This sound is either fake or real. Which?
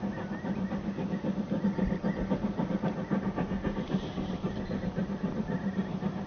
real